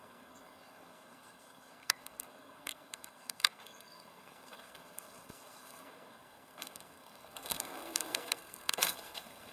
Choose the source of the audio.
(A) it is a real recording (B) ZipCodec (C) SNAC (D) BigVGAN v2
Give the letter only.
C